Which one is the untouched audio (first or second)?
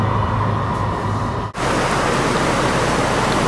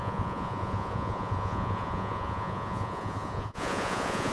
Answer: first